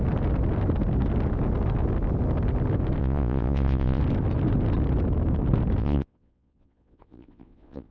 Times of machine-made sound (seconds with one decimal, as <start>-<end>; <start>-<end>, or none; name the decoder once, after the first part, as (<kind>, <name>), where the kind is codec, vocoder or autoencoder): 3.0-4.0 (vocoder, Vocos); 5.8-7.9